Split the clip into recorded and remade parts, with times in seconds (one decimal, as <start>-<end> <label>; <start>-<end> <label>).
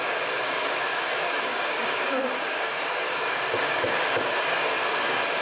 0.0-5.4 remade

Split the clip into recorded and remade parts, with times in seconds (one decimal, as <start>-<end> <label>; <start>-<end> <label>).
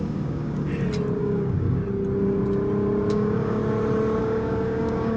0.0-0.7 remade; 0.7-1.2 recorded; 1.2-1.8 remade; 1.8-3.1 recorded; 3.1-3.6 remade; 3.6-4.2 recorded; 4.2-5.2 remade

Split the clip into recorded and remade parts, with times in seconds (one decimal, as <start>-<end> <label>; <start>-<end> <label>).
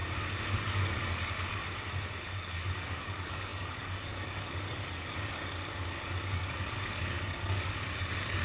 0.0-0.6 recorded; 0.6-1.6 remade; 1.6-2.2 recorded; 2.2-8.4 remade